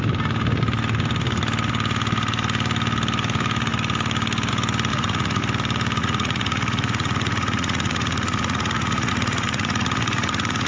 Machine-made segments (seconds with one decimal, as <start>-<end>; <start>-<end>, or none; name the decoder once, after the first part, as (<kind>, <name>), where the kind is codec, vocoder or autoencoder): 4.9-5.4 (vocoder, Vocos); 6.0-10.7